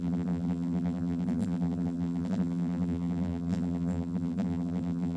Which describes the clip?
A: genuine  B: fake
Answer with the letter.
B